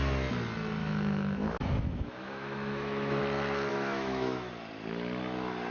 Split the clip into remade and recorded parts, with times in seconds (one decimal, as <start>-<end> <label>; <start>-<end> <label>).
0.0-0.8 recorded; 0.8-3.2 remade; 3.2-3.7 recorded; 3.7-4.5 remade; 4.5-5.7 recorded